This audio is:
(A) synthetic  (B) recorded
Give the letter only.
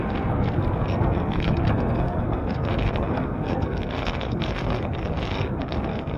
A